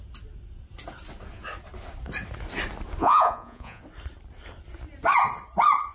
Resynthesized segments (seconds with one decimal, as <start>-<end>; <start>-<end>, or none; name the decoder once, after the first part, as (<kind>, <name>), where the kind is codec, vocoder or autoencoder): 3.0-3.8 (vocoder, Vocos)